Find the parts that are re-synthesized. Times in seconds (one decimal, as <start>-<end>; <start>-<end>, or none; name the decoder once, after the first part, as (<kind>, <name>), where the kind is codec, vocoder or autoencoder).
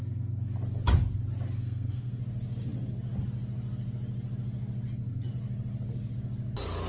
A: 1.6-2.2 (codec, SNAC)